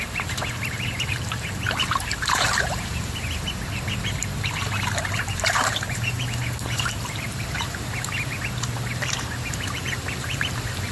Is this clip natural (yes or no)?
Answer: no